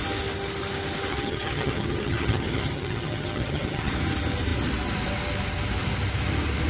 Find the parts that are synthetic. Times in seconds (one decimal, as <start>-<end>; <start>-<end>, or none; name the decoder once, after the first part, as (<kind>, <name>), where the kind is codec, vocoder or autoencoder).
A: 1.1-3.9 (vocoder, HiFi-GAN)